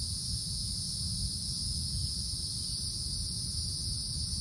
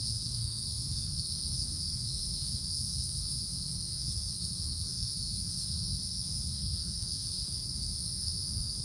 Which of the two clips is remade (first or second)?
second